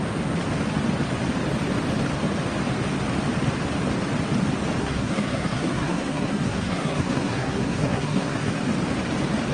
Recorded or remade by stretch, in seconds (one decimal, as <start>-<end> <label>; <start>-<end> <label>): 0.0-4.8 recorded; 4.8-8.7 remade; 8.7-9.5 recorded